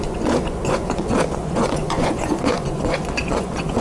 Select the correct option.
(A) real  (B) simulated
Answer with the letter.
B